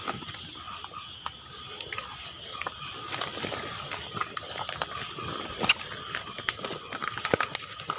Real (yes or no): yes